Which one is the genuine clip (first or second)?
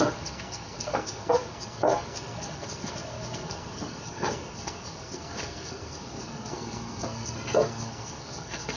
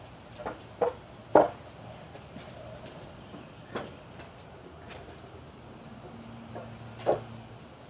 second